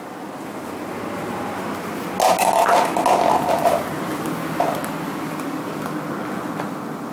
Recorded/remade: recorded